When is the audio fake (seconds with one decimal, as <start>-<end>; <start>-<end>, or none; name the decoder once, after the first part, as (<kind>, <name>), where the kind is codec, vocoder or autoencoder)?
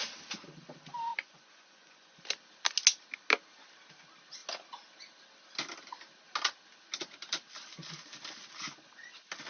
1.1-2.2 (vocoder, Vocos)